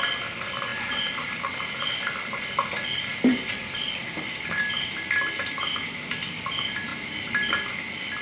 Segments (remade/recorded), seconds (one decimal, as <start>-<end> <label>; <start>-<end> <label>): 0.0-3.1 recorded; 3.1-4.0 remade; 4.0-8.2 recorded